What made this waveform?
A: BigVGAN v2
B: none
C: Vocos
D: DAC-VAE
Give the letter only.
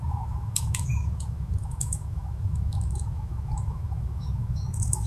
D